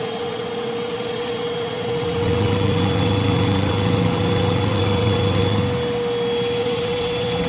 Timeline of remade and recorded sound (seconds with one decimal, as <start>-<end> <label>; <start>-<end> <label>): 0.0-5.6 remade; 5.6-6.6 recorded; 6.6-7.5 remade

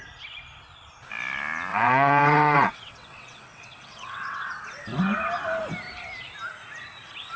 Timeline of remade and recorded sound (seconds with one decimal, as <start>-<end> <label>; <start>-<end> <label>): 0.0-1.7 recorded; 1.7-4.5 remade; 4.5-7.4 recorded

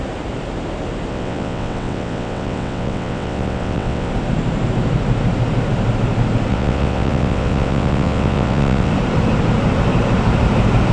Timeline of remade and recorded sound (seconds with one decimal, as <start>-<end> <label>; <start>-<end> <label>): 0.0-1.1 recorded; 1.1-4.1 remade; 4.1-6.5 recorded; 6.5-8.9 remade; 8.9-10.9 recorded

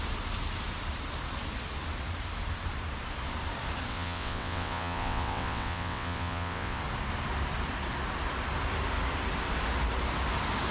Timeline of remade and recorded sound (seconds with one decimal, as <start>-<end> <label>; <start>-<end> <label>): 0.0-3.9 recorded; 3.9-6.8 remade; 6.8-10.7 recorded

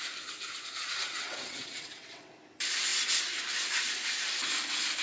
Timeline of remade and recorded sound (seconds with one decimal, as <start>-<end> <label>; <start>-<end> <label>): 0.0-0.8 recorded; 0.8-2.3 remade; 2.3-5.0 recorded

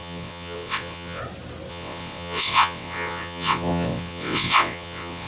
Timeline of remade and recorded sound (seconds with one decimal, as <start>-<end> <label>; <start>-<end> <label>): 0.0-1.2 remade; 1.2-1.7 recorded; 1.7-5.3 remade

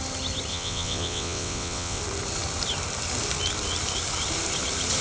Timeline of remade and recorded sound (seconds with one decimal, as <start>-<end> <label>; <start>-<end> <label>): 0.0-0.5 recorded; 0.5-2.0 remade; 2.0-5.0 recorded

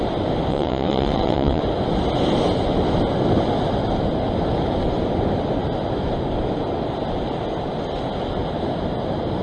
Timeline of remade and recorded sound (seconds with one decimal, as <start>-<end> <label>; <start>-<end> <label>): 0.0-0.5 recorded; 0.5-1.6 remade; 1.6-9.4 recorded